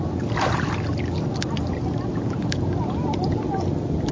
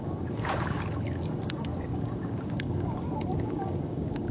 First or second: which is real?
first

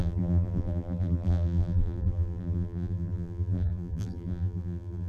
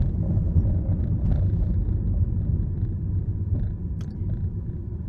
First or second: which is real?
second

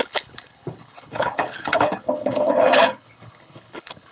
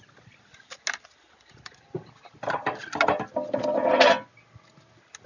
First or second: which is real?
second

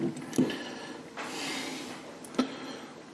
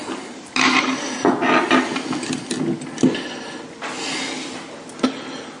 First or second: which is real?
second